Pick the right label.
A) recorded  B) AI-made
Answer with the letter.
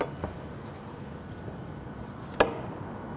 A